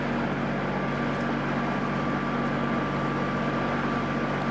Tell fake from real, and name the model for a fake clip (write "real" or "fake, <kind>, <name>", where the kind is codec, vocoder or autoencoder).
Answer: real